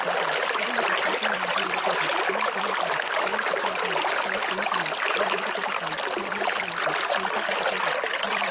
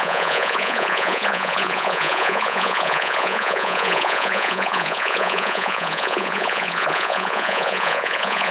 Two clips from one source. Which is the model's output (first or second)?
second